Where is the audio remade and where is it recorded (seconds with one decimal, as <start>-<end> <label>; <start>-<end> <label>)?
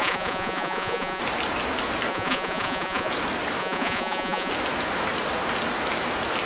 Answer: 0.0-1.2 remade; 1.2-2.1 recorded; 2.1-3.1 remade; 3.1-3.6 recorded; 3.6-4.5 remade; 4.5-6.5 recorded